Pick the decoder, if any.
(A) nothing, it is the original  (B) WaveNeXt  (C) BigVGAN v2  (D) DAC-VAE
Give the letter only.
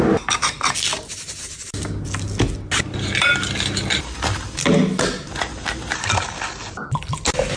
A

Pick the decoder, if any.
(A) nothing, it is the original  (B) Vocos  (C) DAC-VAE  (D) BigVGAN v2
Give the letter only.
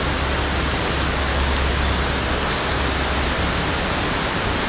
A